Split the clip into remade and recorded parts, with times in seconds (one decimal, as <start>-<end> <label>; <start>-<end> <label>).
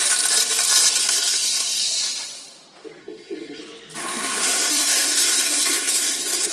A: 0.0-1.0 recorded; 1.0-1.8 remade; 1.8-3.0 recorded; 3.0-3.6 remade; 3.6-4.0 recorded; 4.0-6.5 remade